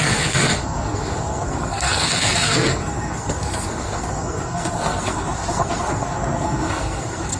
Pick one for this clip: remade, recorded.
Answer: remade